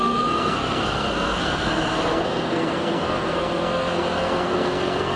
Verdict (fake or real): fake